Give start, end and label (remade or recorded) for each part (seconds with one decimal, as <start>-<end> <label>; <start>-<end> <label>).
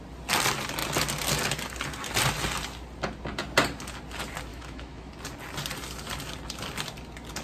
0.0-4.5 recorded; 4.5-5.1 remade; 5.1-7.4 recorded